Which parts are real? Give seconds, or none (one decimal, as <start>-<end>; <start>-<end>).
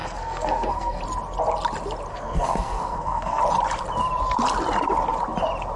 1.0-2.1; 3.4-5.8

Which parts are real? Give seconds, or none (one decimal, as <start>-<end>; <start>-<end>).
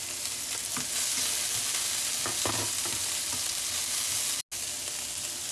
0.0-5.5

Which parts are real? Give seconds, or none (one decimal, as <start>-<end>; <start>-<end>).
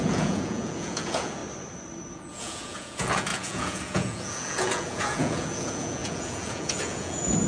1.4-2.1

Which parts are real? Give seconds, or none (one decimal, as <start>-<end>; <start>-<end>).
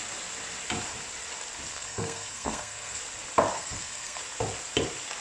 0.0-1.7; 3.0-3.5; 4.2-5.2